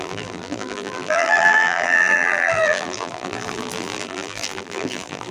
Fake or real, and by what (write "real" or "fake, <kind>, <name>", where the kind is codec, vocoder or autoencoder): fake, vocoder, BigVGAN v2